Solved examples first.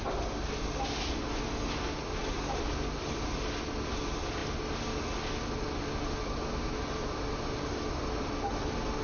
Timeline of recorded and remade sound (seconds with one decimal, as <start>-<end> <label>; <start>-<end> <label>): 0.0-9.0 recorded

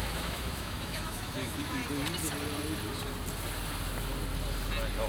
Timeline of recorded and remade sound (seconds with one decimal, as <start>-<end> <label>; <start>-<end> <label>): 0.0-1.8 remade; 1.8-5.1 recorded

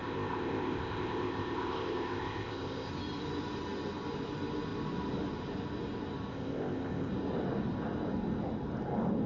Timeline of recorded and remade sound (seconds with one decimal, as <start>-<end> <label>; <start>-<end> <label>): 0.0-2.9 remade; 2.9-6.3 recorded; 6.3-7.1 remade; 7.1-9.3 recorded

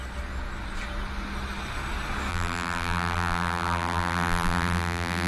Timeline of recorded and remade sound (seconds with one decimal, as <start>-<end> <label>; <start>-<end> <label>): 0.0-2.3 recorded; 2.3-5.3 remade

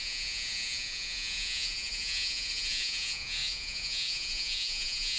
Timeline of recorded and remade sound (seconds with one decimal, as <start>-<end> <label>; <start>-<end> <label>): 0.0-5.2 remade

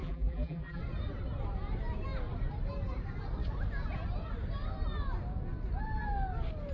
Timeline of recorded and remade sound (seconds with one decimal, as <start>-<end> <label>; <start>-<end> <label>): 0.0-0.8 remade; 0.8-6.7 recorded

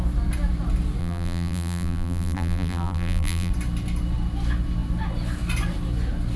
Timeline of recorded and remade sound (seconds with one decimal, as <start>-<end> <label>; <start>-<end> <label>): 0.0-1.0 recorded; 1.0-3.5 remade; 3.5-6.4 recorded